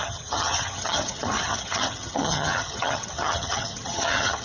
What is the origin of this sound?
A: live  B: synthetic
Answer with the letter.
B